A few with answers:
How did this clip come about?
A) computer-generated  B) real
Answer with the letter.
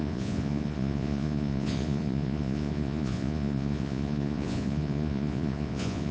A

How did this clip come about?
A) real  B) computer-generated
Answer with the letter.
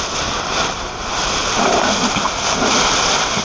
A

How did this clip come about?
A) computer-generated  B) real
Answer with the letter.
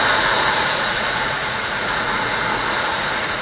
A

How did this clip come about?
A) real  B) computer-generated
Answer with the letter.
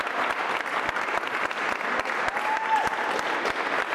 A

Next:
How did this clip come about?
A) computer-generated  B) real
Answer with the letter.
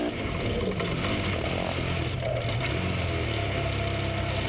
B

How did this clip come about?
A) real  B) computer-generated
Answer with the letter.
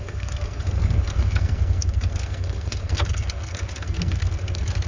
B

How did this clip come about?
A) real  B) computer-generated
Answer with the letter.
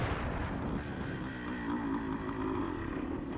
A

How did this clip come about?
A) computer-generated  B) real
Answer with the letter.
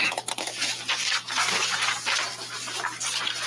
B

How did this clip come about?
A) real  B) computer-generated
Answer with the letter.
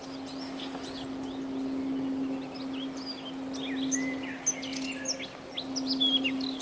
A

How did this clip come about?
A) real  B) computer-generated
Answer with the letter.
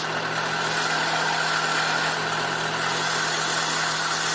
A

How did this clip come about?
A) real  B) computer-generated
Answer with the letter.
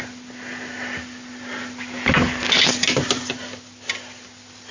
A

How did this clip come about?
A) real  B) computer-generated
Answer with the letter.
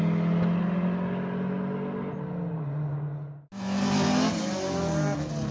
A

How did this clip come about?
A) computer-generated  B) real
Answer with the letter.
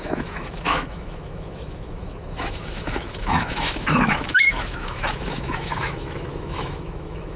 A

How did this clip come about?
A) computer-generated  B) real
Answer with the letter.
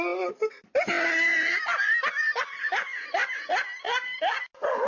B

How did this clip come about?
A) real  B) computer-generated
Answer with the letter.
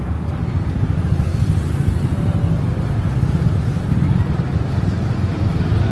A